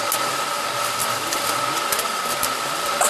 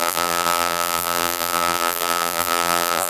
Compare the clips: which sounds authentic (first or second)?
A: first